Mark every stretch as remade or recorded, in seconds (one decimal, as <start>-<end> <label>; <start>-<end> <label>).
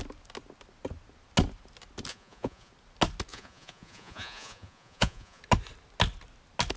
0.0-2.1 recorded; 2.1-2.7 remade; 2.7-3.3 recorded; 3.3-5.4 remade; 5.4-6.8 recorded